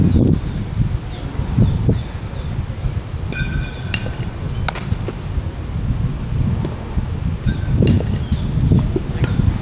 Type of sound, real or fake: real